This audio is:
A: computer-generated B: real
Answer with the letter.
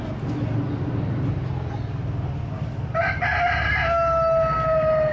B